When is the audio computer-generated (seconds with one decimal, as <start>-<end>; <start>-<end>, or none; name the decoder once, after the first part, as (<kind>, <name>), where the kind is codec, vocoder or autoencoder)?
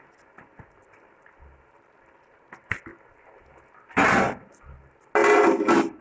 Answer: none